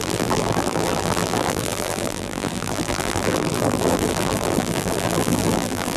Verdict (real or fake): fake